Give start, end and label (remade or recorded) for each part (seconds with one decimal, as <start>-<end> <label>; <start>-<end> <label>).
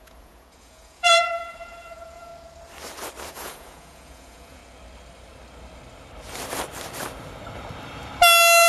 0.0-2.3 remade; 2.3-3.3 recorded; 3.3-4.6 remade; 4.6-8.7 recorded